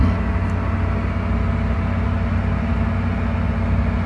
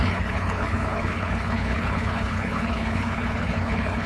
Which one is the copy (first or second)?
second